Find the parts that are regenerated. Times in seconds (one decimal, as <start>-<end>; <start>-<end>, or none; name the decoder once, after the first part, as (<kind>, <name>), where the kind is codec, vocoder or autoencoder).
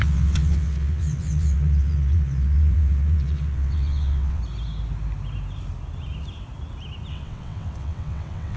0.0-4.4 (vocoder, WaveNeXt); 7.1-8.6